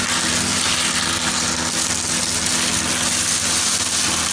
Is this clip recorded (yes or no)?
yes